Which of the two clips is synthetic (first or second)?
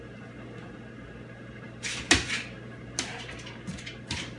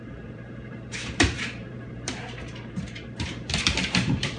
second